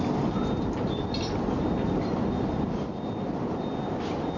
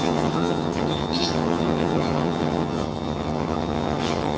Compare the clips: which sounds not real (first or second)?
second